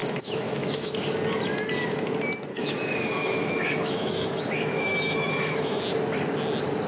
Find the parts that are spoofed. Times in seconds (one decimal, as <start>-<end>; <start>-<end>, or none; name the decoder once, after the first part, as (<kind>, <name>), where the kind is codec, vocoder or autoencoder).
0.0-0.9 (autoencoder, DAC-VAE); 2.5-5.8